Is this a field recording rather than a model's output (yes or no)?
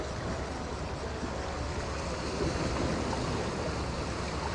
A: yes